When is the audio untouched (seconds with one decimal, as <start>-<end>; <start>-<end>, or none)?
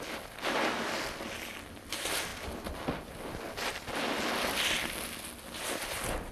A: 0.0-6.3